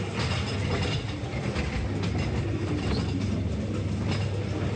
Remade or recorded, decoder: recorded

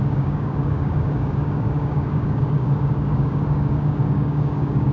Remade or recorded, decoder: remade, codec, DAC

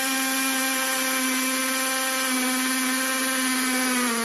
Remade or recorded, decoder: recorded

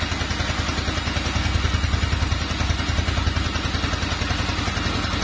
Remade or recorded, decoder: recorded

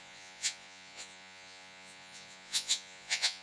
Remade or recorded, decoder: remade, vocoder, Vocos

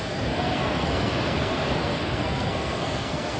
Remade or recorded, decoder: remade, codec, SNAC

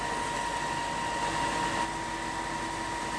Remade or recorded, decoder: recorded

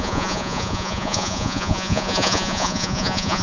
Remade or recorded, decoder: remade, vocoder, Vocos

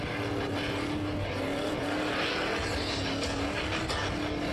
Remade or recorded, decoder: recorded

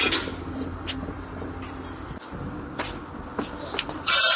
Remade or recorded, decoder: recorded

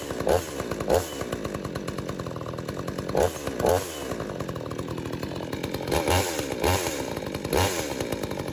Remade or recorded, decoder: recorded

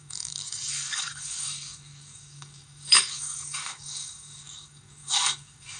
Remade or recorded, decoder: remade, codec, DAC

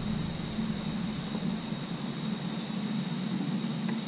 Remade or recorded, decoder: recorded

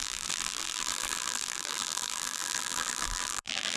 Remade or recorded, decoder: remade, vocoder, BigVGAN v2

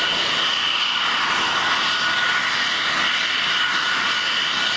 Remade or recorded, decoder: recorded